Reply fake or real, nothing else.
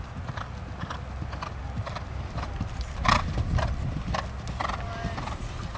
real